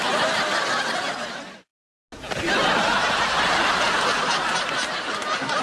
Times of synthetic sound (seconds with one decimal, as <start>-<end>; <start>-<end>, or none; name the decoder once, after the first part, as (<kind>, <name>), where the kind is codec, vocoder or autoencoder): none